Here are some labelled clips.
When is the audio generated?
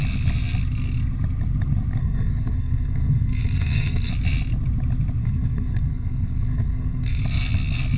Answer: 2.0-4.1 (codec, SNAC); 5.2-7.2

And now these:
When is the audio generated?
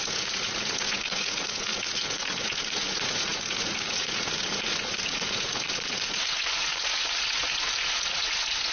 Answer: 0.0-8.7 (vocoder, Vocos)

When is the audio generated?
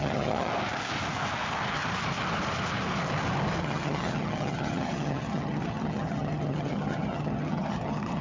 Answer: 0.0-0.5 (vocoder, HiFi-GAN); 3.6-8.2